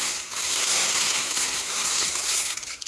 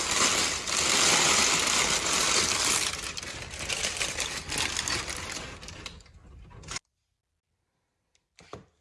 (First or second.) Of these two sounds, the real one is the second